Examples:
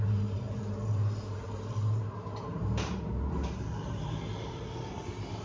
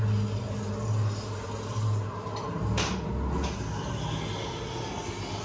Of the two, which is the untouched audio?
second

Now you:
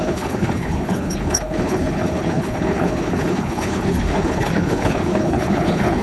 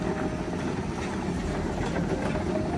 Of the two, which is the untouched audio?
second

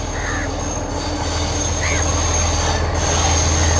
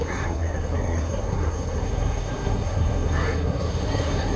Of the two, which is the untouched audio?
first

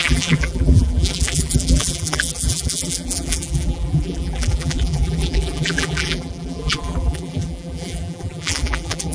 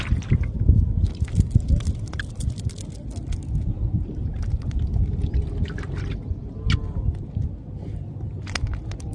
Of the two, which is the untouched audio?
second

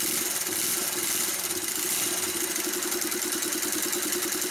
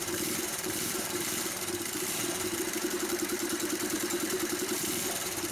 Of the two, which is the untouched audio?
first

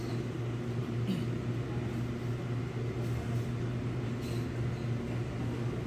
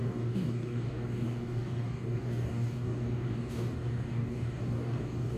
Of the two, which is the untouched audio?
first